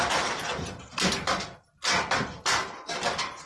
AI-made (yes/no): no